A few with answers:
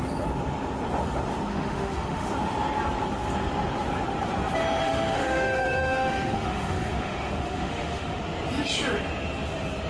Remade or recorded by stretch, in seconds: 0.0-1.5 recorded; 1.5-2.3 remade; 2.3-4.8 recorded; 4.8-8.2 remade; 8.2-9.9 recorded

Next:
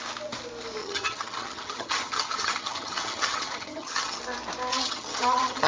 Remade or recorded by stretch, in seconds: 0.0-0.8 recorded; 0.8-4.2 remade; 4.2-4.7 recorded; 4.7-5.7 remade